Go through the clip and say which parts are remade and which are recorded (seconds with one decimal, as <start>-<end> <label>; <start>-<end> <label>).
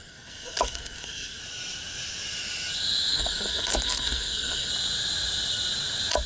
0.0-1.4 remade; 1.4-3.1 recorded; 3.1-4.7 remade; 4.7-6.3 recorded